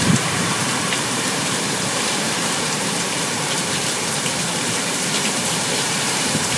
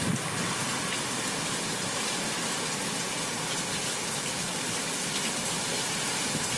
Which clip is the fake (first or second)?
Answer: first